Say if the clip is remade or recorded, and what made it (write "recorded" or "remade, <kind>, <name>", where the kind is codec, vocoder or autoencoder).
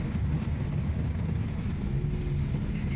recorded